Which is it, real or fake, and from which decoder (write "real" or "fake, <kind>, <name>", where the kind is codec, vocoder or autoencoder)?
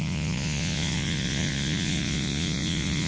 fake, vocoder, Vocos